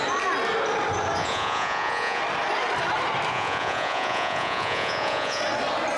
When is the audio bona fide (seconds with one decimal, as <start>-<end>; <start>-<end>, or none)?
0.0-1.2; 2.2-3.3; 5.4-6.0